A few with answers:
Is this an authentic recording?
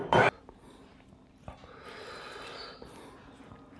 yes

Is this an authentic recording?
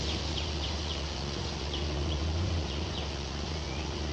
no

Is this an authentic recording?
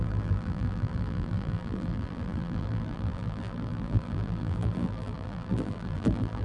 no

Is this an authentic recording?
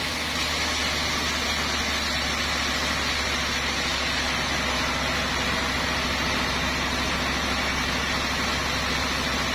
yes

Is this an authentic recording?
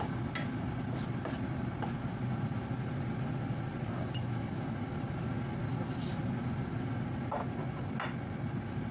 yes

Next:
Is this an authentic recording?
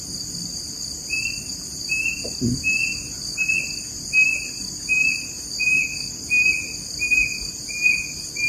yes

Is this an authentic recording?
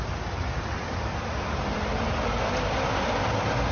yes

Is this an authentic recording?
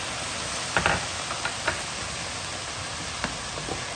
yes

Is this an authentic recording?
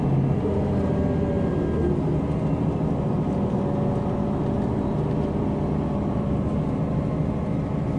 yes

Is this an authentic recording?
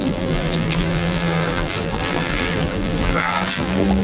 no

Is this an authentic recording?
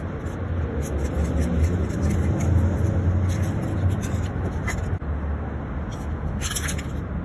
yes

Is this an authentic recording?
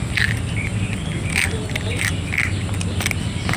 yes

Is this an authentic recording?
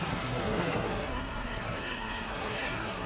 no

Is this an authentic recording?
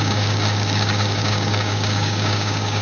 no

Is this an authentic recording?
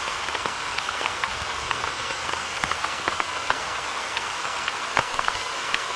no